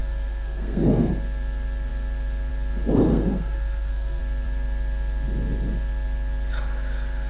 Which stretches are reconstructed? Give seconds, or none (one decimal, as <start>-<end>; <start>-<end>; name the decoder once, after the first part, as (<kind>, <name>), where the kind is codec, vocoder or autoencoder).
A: 0.0-1.1 (codec, SNAC); 3.1-4.2

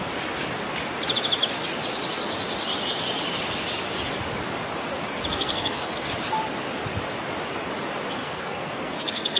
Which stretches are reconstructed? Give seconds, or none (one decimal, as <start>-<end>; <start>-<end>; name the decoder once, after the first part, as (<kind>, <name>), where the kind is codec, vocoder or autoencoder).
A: 5.3-6.1 (codec, SNAC); 8.2-9.4

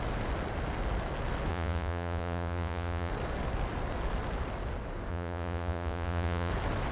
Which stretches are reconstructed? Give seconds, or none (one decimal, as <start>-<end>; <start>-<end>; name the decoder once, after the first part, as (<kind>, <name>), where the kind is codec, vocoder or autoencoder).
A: 1.5-3.1 (vocoder, Vocos); 5.1-6.5

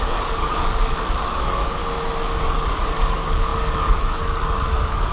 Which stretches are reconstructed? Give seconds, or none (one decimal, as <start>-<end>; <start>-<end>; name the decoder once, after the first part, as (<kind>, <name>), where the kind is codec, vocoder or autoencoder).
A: 0.0-1.8 (codec, DAC); 2.4-5.1

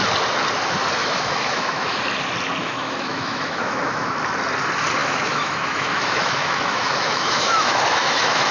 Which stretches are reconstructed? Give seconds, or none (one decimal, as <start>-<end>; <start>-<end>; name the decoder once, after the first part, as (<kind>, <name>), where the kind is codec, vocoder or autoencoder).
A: 1.0-2.0 (autoencoder, DAC-VAE); 2.6-4.1; 5.0-8.5

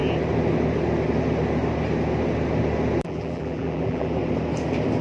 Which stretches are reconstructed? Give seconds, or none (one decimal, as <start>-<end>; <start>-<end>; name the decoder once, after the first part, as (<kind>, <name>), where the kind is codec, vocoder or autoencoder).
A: 3.0-4.2 (vocoder, BigVGAN v2)

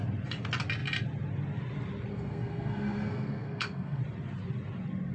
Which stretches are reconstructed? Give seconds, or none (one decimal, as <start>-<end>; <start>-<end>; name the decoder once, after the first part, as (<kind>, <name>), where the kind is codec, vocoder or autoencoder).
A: 2.1-4.0 (codec, SNAC)